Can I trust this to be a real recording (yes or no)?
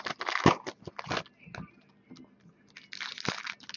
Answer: yes